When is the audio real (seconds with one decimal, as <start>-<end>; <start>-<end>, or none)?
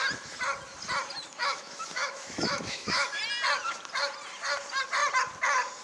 0.0-1.4; 3.2-5.8